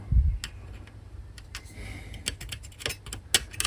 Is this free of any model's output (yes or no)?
yes